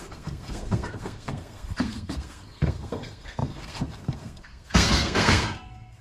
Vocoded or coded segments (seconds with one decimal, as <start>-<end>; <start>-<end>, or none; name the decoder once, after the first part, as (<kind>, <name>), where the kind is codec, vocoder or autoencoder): 0.0-6.0 (codec, SNAC)

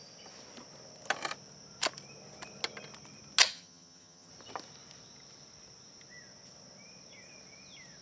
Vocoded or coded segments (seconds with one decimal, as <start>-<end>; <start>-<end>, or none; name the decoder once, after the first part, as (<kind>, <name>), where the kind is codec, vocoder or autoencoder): 3.5-4.3 (vocoder, HiFi-GAN)

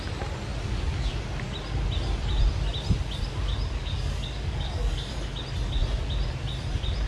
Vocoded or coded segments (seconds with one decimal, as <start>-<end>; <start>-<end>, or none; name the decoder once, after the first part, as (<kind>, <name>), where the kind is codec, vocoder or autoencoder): 3.8-5.1 (codec, DAC)

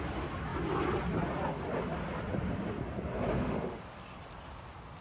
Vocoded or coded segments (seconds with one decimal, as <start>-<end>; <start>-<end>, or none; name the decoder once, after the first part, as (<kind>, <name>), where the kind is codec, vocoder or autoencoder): 3.3-3.8 (autoencoder, DAC-VAE)

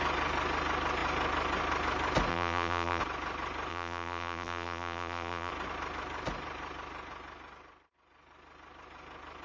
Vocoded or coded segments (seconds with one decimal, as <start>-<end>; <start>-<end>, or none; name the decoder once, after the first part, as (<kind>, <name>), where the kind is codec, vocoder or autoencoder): 2.3-3.0 (vocoder, BigVGAN v2); 3.7-5.5